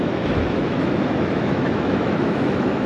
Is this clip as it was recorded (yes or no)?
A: no